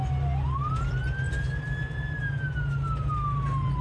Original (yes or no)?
yes